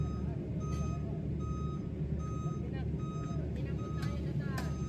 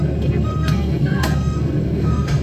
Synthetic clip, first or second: second